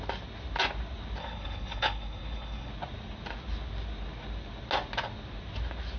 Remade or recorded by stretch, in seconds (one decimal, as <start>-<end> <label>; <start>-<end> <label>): 0.0-1.2 recorded; 1.2-2.7 remade; 2.7-6.0 recorded